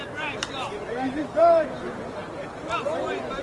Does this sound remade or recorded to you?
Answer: remade